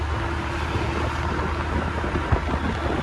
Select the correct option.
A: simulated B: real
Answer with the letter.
B